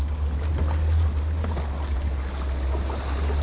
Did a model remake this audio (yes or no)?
no